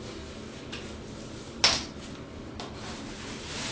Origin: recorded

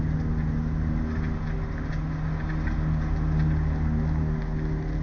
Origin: recorded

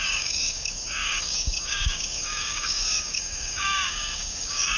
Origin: remade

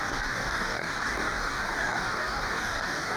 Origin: remade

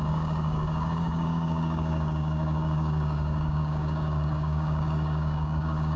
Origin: remade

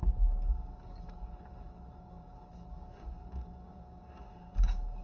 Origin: remade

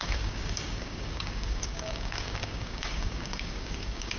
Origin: remade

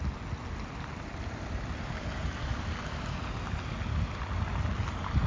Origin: recorded